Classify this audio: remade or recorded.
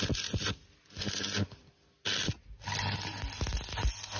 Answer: recorded